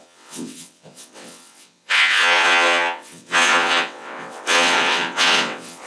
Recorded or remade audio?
remade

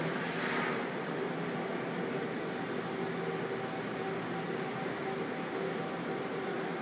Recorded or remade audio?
recorded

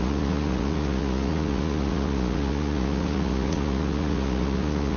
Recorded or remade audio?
remade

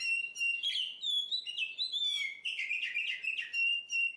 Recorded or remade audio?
recorded